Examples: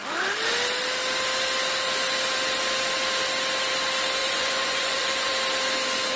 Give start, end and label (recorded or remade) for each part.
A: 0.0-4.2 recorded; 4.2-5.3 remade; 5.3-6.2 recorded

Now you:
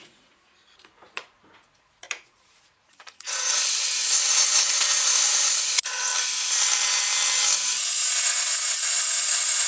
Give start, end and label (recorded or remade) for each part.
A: 0.0-6.1 remade; 6.1-7.7 recorded; 7.7-9.7 remade

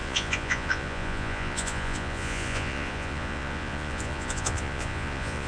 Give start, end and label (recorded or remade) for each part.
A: 0.0-5.5 remade

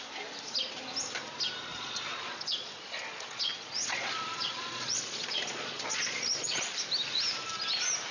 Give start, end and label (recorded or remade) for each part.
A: 0.0-1.7 recorded; 1.7-6.6 remade; 6.6-8.1 recorded